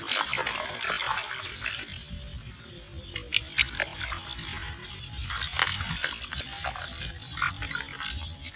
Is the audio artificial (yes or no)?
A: no